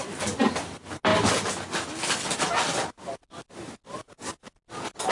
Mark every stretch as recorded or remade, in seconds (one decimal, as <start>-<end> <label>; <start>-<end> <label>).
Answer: 0.0-5.1 recorded